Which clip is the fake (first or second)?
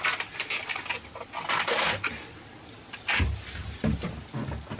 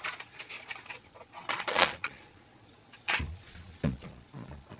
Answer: second